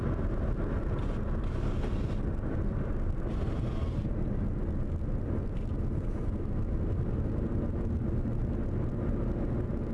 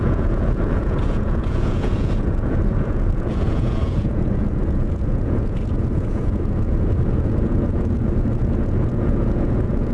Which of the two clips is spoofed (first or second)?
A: second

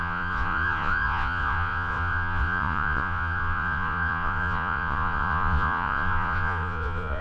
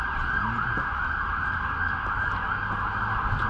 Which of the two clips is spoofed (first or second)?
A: first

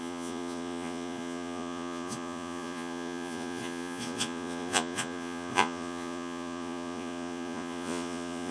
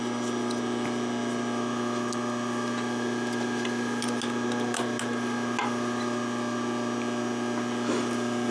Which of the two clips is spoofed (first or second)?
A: first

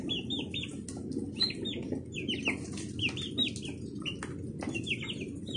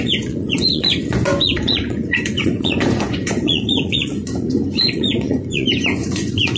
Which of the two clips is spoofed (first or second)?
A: second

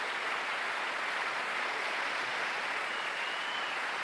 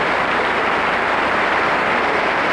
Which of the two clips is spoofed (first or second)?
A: first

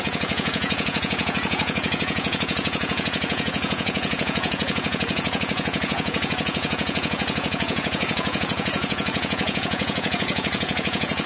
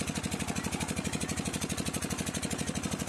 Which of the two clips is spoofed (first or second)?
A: first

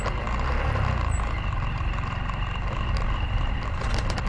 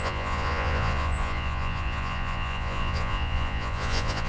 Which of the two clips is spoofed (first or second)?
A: second